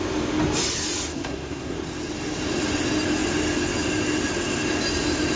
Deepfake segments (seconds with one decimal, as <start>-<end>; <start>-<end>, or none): 1.1-1.8